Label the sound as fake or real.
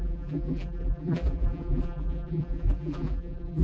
fake